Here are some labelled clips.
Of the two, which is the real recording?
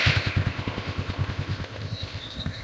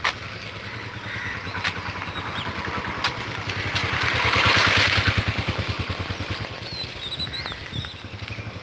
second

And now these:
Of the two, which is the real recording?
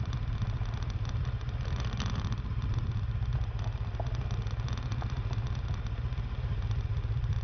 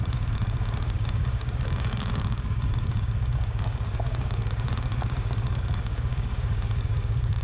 first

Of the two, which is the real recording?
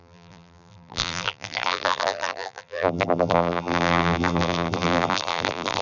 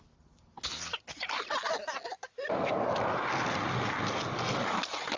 second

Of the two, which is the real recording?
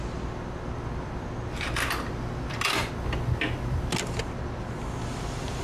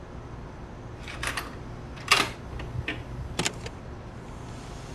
first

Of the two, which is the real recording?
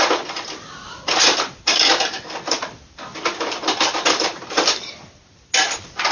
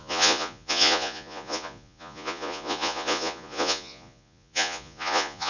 first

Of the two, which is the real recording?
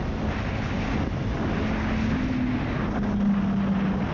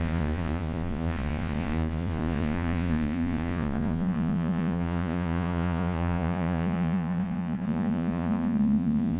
first